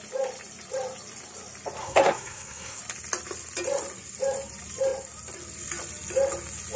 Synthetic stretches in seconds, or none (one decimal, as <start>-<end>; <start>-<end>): 1.8-2.8